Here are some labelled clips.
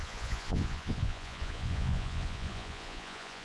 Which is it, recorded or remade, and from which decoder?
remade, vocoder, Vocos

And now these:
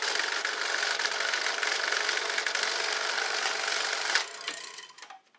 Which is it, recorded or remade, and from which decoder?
recorded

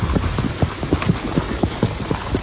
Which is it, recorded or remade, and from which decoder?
remade, vocoder, BigVGAN v2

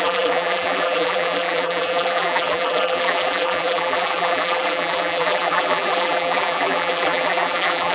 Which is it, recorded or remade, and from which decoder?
remade, vocoder, BigVGAN v2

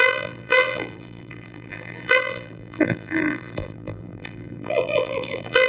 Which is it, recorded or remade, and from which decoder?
remade, vocoder, BigVGAN v2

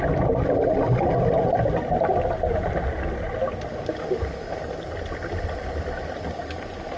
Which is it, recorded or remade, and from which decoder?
recorded